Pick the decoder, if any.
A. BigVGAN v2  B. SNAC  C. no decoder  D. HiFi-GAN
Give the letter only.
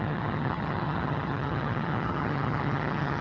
D